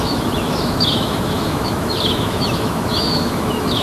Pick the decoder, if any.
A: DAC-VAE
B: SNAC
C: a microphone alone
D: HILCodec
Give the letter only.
A